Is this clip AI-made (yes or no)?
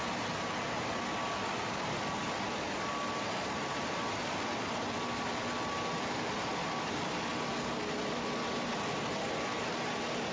no